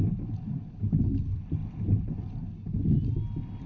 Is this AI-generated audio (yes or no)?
no